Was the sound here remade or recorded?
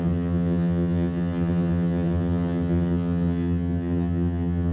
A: remade